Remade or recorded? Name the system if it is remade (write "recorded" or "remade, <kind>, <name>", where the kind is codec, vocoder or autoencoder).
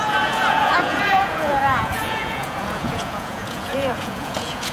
remade, vocoder, Vocos